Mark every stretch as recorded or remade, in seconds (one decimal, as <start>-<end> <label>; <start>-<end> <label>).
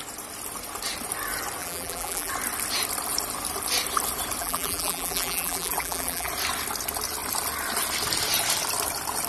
0.0-1.6 recorded; 1.6-2.3 remade; 2.3-4.4 recorded; 4.4-6.3 remade; 6.3-9.3 recorded